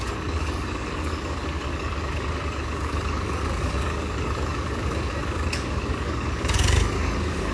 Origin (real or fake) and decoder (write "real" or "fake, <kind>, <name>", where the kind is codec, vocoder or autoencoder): fake, codec, DAC